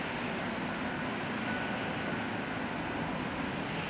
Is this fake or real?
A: real